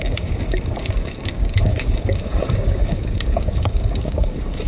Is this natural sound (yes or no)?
no